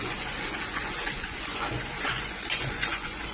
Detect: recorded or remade remade